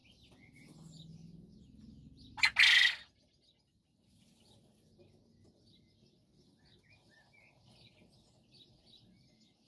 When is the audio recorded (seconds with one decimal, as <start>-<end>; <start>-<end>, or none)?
0.0-9.7